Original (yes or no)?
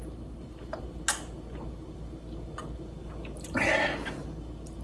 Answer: yes